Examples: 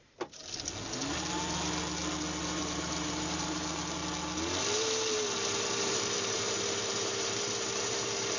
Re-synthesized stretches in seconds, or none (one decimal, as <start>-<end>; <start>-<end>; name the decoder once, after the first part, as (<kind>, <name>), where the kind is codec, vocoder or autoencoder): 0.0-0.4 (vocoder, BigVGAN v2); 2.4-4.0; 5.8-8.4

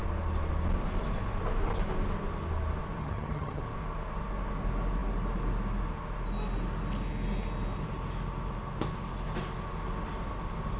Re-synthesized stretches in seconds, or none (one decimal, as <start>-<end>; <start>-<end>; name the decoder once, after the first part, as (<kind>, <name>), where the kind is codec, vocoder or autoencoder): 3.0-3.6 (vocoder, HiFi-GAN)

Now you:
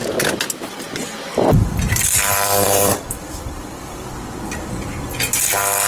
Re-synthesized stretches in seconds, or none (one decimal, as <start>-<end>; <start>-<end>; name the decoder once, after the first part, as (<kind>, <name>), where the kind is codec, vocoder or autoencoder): 1.0-3.7 (vocoder, BigVGAN v2)